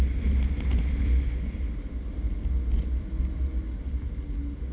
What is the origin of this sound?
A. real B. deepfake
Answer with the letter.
A